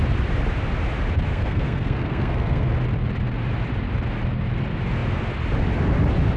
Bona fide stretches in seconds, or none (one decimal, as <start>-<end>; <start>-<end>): 0.0-1.3; 2.7-6.4